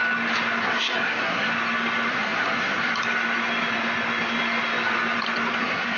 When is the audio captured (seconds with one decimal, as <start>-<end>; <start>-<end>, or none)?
0.0-0.6; 1.5-2.1; 2.9-5.6